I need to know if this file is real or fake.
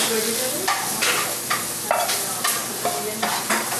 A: real